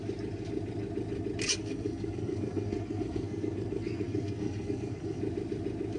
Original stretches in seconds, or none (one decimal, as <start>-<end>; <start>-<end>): 0.0-1.6; 5.2-6.0